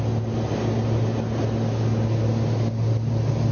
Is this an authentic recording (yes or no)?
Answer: yes